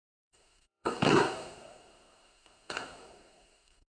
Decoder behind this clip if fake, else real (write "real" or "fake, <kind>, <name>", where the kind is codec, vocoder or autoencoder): fake, codec, SNAC